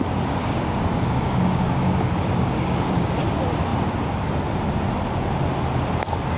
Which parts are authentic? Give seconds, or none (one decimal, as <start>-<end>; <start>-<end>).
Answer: 0.0-0.4; 3.1-6.4